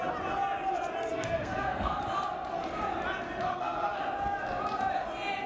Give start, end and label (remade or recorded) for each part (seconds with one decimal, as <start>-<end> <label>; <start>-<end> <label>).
0.0-1.1 recorded; 1.1-2.0 remade; 2.0-3.5 recorded; 3.5-4.0 remade; 4.0-5.5 recorded